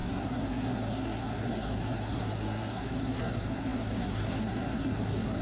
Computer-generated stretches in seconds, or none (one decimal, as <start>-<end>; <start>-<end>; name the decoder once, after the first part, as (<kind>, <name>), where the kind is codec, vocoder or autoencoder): 0.0-5.4 (codec, SNAC)